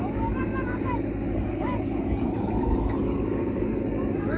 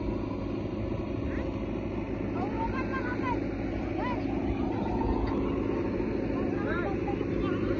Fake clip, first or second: first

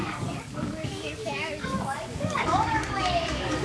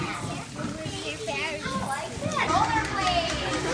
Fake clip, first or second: first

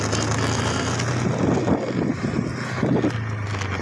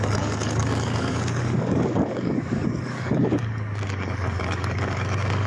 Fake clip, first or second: second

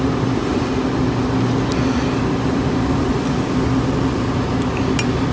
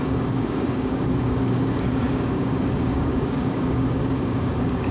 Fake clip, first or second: second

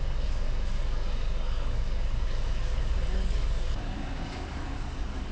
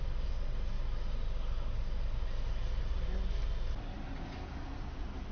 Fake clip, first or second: first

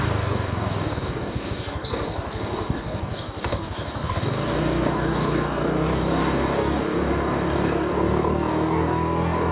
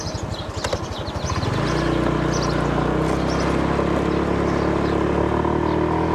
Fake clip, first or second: first